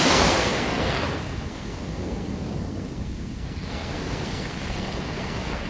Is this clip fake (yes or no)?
yes